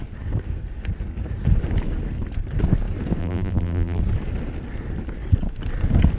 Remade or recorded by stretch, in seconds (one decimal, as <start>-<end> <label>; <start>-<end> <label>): 0.0-3.2 recorded; 3.2-4.0 remade; 4.0-6.2 recorded